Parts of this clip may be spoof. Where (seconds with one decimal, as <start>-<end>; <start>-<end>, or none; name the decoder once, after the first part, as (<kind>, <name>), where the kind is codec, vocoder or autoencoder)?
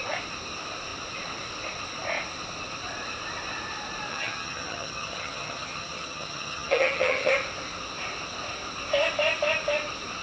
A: 4.1-7.3 (vocoder, HiFi-GAN)